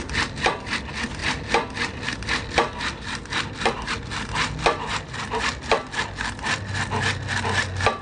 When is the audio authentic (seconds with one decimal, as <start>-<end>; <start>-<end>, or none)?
0.0-1.2; 3.9-8.0